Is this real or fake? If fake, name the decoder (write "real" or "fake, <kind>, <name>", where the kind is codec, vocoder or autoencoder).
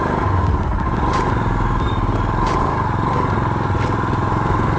real